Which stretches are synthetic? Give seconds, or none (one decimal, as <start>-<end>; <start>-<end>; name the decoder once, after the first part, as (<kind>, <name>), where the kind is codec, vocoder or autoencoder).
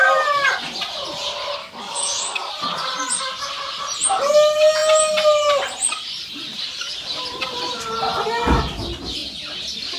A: 1.6-2.5 (codec, DAC)